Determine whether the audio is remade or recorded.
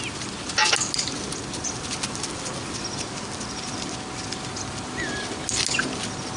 recorded